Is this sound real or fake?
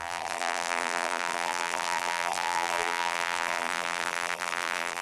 fake